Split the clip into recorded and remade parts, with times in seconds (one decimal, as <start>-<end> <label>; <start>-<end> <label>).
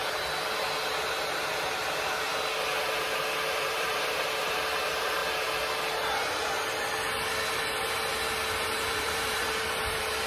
0.0-1.1 recorded; 1.1-2.3 remade; 2.3-3.5 recorded; 3.5-5.2 remade; 5.2-7.5 recorded; 7.5-10.3 remade